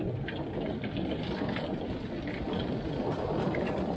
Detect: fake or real real